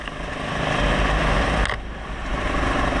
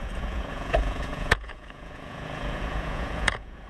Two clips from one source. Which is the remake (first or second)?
second